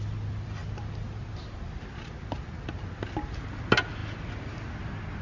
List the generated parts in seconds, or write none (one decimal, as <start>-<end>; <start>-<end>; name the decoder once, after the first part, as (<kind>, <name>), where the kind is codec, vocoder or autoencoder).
none